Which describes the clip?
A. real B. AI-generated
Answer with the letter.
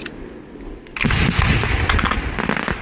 A